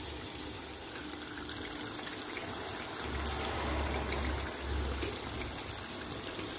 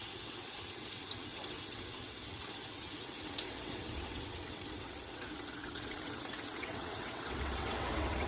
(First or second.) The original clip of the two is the first